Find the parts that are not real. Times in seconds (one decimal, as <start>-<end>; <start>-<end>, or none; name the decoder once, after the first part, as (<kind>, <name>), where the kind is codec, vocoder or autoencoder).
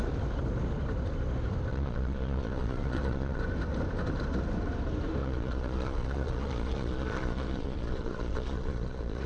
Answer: 1.7-3.4 (vocoder, Vocos); 5.2-9.3